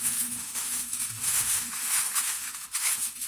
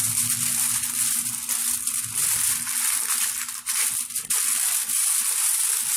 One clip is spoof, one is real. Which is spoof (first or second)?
first